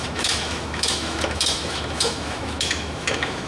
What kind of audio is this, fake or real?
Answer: fake